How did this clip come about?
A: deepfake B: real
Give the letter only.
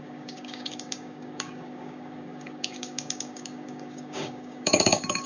A